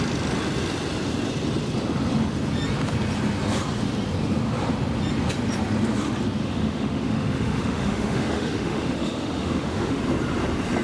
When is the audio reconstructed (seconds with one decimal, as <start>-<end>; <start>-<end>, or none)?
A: 6.4-10.0